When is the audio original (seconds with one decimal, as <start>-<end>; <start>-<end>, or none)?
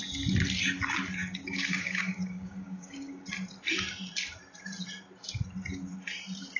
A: 0.0-1.2; 3.3-6.6